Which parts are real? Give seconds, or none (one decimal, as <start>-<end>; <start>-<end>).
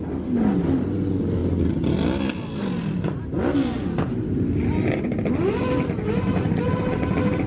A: 0.0-7.5